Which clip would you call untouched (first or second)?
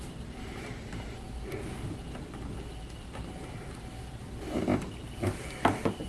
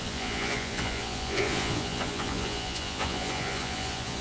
first